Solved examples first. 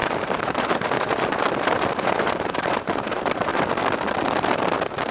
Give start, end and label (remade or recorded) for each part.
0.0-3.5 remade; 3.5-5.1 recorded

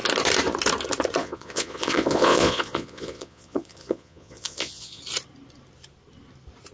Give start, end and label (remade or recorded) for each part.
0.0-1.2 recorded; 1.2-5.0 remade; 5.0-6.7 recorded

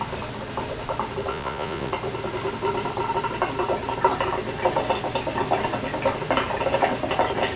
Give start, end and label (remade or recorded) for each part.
0.0-1.3 recorded; 1.3-1.9 remade; 1.9-7.6 recorded

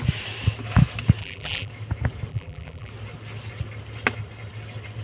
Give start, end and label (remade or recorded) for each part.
0.0-1.2 recorded; 1.2-1.7 remade; 1.7-2.3 recorded; 2.3-2.9 remade; 2.9-5.0 recorded

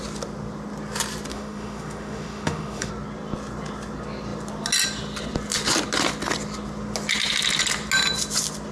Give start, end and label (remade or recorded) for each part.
0.0-1.3 recorded; 1.3-2.9 remade; 2.9-8.7 recorded